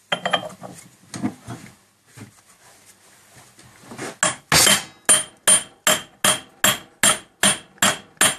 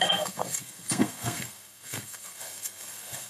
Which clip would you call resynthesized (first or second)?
second